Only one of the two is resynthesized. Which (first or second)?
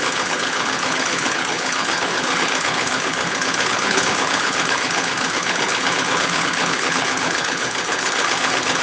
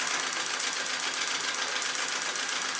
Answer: first